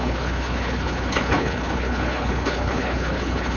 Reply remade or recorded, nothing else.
remade